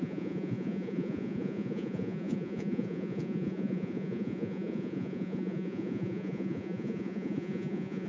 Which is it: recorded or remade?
remade